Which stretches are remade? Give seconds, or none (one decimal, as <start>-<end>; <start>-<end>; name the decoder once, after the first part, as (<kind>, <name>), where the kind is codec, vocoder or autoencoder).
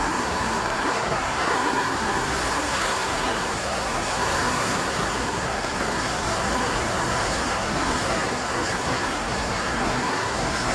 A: 0.0-10.7 (codec, SNAC)